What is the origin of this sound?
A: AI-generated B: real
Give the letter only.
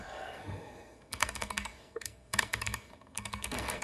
A